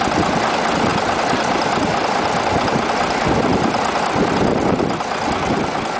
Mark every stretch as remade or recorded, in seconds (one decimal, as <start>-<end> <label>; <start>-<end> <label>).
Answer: 0.0-6.0 recorded